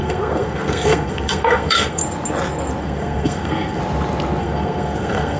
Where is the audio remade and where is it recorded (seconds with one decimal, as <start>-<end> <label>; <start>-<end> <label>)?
0.0-2.0 remade; 2.0-2.8 recorded; 2.8-3.8 remade; 3.8-4.4 recorded; 4.4-5.4 remade